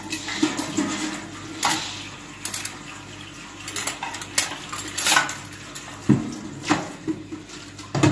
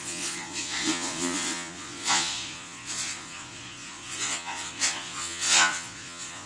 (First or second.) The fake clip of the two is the second